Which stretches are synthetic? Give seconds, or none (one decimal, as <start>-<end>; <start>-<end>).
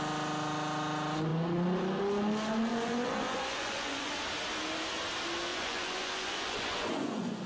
2.7-4.1; 5.5-7.5